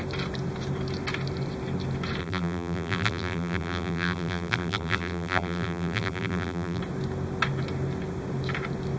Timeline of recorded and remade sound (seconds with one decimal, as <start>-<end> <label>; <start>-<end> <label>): 0.0-2.2 recorded; 2.2-6.8 remade; 6.8-9.0 recorded